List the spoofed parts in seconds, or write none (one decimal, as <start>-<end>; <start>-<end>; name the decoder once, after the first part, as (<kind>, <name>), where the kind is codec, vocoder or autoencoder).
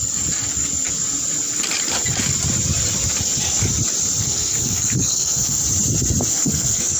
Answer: 4.2-5.6 (codec, SNAC); 6.3-7.0